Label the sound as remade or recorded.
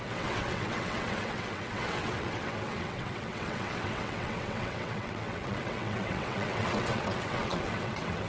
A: remade